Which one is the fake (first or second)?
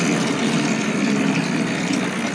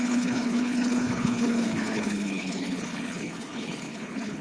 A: second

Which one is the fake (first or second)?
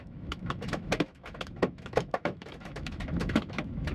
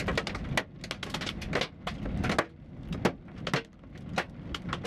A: first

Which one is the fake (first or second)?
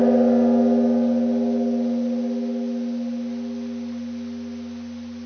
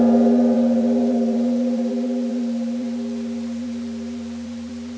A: second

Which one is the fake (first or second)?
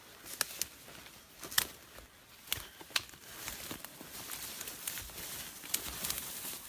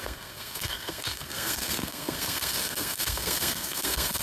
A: second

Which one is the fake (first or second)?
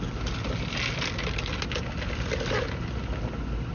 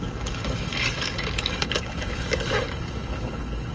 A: second